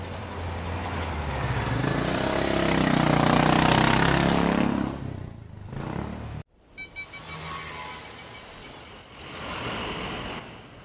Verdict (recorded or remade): recorded